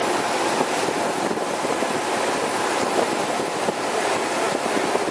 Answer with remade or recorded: recorded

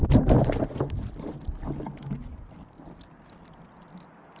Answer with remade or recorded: recorded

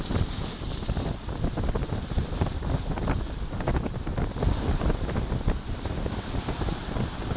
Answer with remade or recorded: recorded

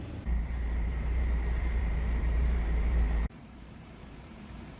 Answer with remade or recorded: remade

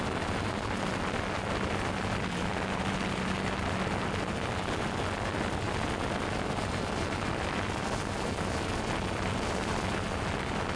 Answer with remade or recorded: recorded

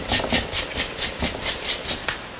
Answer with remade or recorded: remade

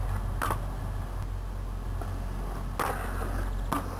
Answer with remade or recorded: recorded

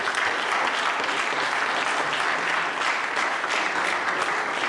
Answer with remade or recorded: recorded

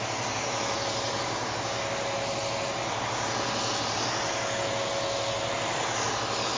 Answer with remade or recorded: recorded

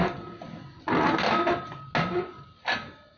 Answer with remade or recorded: recorded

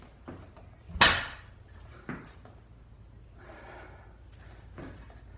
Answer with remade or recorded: recorded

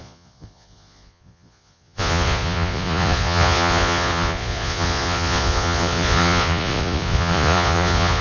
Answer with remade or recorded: remade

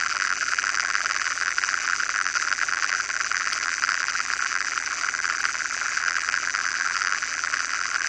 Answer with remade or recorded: remade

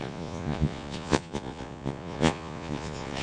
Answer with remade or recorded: remade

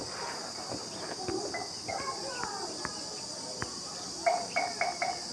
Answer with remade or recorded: recorded